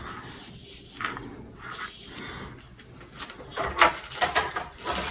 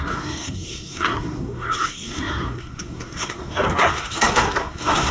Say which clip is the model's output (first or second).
second